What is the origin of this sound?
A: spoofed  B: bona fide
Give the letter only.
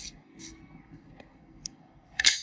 A